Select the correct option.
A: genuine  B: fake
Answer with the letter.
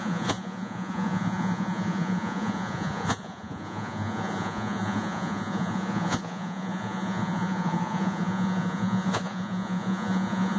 B